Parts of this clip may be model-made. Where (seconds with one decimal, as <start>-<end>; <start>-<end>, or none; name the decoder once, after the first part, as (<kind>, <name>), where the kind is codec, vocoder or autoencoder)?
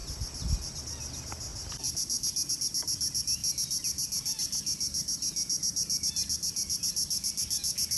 none